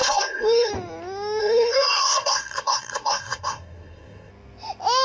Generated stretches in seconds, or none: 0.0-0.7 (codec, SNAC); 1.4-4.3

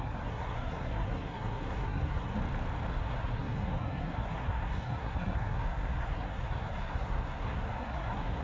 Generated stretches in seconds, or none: 0.0-2.4 (codec, SNAC); 2.9-8.4

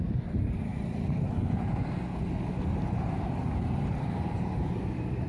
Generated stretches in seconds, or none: none

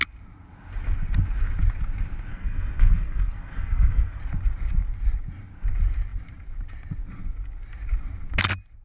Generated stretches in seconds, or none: 2.3-4.2 (codec, SNAC)

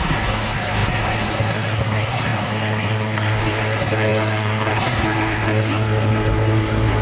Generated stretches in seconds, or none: 0.0-7.0 (codec, SNAC)

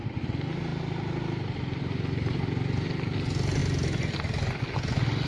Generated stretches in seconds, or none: none

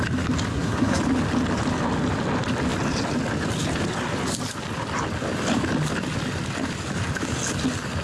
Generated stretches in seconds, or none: 0.5-1.0 (codec, SNAC)